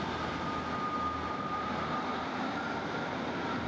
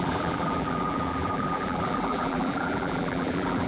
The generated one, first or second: second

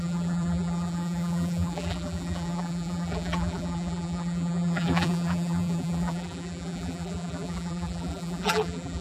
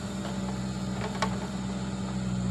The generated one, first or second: first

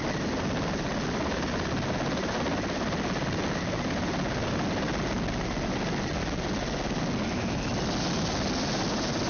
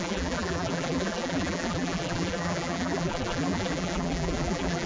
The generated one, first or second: second